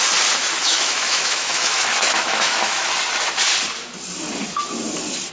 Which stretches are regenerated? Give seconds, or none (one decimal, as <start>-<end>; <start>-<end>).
0.6-2.9